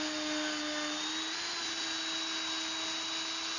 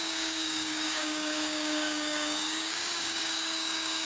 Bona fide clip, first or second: first